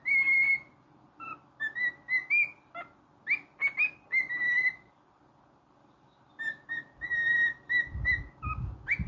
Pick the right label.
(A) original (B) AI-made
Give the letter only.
A